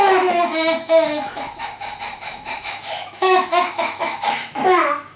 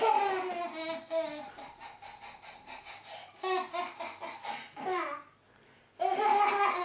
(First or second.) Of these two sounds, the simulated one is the first